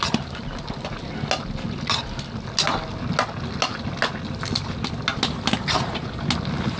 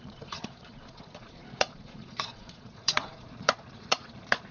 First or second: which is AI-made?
second